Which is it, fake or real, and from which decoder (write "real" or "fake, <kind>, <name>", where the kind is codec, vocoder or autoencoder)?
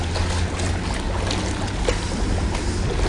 real